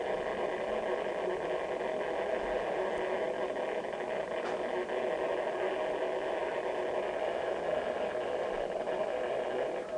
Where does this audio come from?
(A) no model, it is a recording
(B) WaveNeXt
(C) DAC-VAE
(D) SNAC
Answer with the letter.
A